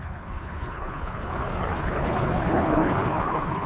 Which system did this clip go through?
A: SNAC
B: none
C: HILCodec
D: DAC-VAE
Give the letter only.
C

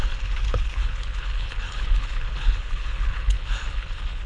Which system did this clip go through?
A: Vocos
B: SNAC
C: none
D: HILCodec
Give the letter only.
D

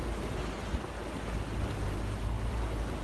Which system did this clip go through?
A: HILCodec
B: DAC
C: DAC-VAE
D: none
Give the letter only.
D